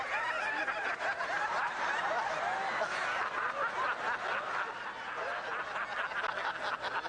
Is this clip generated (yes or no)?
no